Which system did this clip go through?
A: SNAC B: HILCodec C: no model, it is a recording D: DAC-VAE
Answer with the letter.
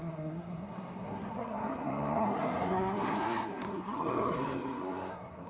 A